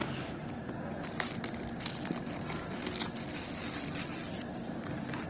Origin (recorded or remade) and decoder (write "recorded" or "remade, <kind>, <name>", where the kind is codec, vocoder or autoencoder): recorded